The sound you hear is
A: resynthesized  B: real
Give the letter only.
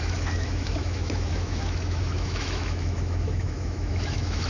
A